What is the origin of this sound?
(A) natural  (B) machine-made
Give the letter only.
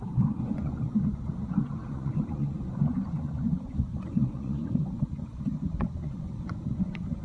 B